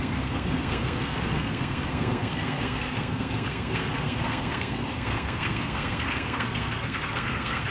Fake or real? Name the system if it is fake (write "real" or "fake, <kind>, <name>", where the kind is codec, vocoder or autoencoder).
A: fake, codec, SNAC